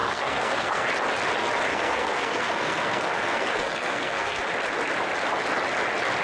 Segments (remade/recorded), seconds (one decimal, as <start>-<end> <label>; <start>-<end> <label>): 0.0-0.9 remade; 0.9-1.7 recorded; 1.7-4.4 remade; 4.4-6.2 recorded

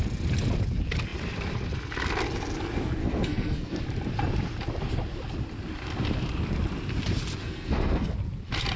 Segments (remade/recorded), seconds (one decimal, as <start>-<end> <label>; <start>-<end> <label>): 0.0-3.0 recorded; 3.0-3.8 remade; 3.8-7.4 recorded; 7.4-8.1 remade; 8.1-8.8 recorded